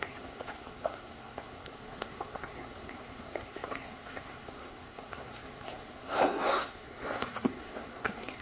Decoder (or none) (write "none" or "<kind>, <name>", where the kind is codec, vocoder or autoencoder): codec, SNAC